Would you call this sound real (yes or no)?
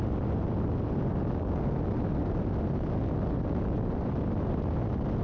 yes